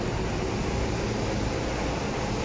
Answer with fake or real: real